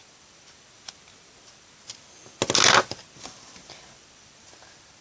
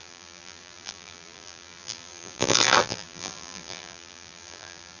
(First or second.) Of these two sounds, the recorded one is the first